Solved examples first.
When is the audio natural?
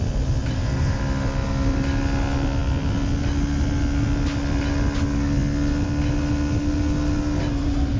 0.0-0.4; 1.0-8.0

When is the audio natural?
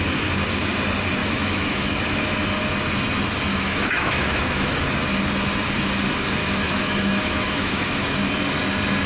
0.0-1.2; 2.0-3.5; 4.9-6.4; 8.2-9.1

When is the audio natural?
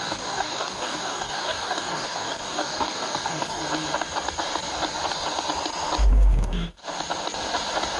3.6-6.1; 6.8-8.0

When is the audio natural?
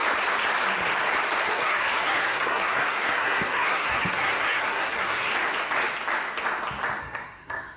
0.0-1.4; 5.3-7.0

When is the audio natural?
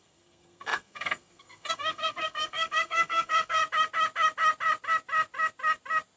3.6-6.2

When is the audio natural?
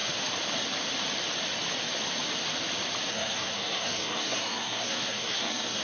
0.0-3.1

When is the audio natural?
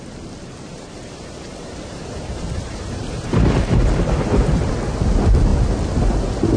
0.0-0.7; 4.7-6.6